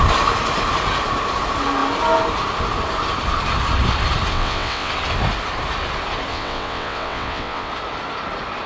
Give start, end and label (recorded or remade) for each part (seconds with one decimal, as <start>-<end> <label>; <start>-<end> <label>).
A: 0.0-4.3 recorded; 4.3-4.9 remade; 4.9-6.3 recorded; 6.3-7.7 remade; 7.7-8.7 recorded